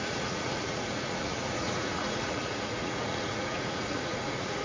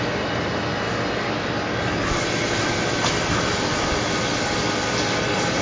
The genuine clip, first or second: second